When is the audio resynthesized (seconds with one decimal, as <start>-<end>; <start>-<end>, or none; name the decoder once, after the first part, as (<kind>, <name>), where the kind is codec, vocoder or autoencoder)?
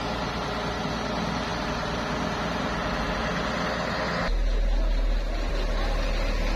none